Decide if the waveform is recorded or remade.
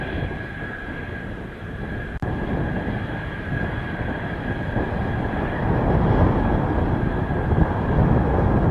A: recorded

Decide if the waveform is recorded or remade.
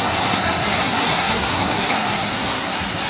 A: remade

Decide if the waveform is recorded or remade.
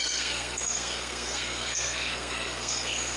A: remade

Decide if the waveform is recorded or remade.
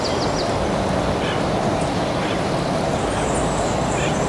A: recorded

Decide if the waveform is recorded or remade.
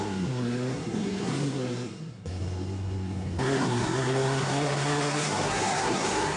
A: remade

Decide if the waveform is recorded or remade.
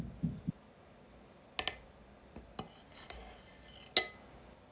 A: recorded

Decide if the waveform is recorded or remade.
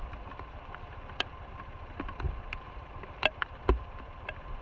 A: recorded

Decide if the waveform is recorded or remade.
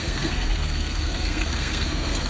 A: remade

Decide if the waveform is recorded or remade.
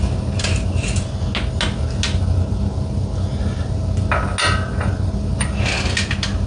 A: recorded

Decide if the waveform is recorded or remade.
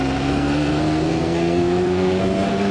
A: remade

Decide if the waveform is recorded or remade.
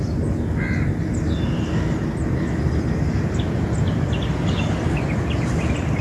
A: recorded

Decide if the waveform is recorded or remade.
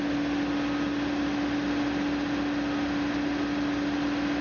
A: recorded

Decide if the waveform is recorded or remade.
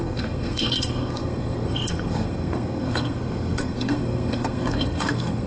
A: remade